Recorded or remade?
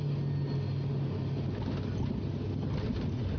recorded